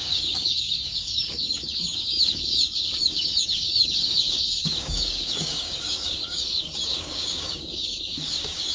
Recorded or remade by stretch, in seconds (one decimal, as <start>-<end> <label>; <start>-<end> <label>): 0.0-8.7 remade